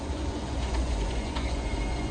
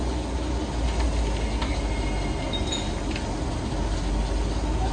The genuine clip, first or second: second